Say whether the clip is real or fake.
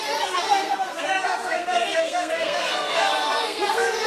fake